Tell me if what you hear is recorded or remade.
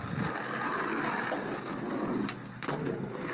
recorded